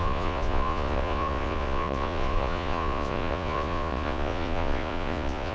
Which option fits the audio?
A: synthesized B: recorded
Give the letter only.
A